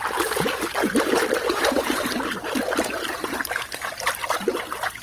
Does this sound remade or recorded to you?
remade